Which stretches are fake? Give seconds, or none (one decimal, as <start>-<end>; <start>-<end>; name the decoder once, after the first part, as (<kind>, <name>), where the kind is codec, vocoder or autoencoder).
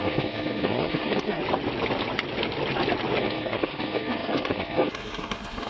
0.0-1.4 (codec, SNAC); 3.2-5.7